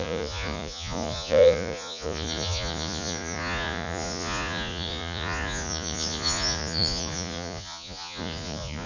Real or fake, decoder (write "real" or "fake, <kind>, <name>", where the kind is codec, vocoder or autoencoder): fake, vocoder, Vocos